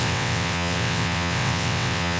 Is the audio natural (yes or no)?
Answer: no